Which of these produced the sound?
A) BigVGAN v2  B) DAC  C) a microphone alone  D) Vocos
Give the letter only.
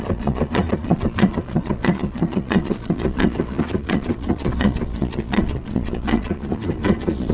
D